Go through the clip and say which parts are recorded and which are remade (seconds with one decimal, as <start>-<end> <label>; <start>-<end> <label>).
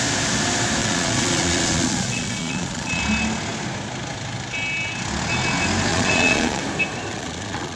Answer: 0.0-0.8 recorded; 0.8-3.0 remade; 3.0-5.9 recorded; 5.9-6.6 remade; 6.6-7.1 recorded; 7.1-7.8 remade